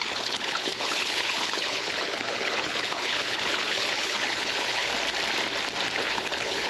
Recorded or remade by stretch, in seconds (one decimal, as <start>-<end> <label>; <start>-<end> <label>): 0.0-4.9 remade; 4.9-6.0 recorded; 6.0-6.7 remade